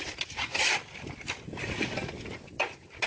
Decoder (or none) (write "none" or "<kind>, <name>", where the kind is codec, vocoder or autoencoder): none